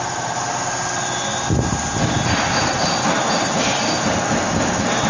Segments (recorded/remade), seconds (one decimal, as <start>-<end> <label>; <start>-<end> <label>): 0.0-5.1 recorded